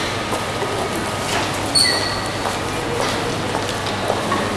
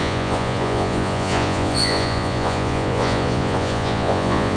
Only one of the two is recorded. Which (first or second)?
first